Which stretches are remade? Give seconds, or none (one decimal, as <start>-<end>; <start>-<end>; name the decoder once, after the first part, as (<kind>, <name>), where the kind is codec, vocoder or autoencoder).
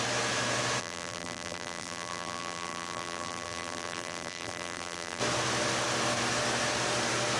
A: 0.8-5.2 (vocoder, BigVGAN v2)